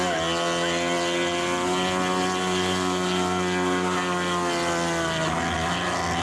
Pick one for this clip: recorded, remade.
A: recorded